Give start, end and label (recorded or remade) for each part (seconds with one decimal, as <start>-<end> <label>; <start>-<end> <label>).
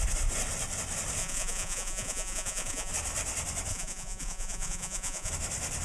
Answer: 0.0-1.2 recorded; 1.2-2.9 remade; 2.9-3.7 recorded; 3.7-5.3 remade; 5.3-5.8 recorded